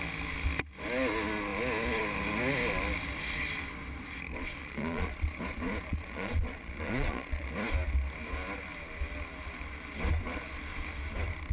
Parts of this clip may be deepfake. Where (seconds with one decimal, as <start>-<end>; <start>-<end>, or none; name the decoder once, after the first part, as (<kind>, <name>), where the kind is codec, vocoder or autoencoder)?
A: 4.6-5.4 (vocoder, Vocos); 5.9-7.5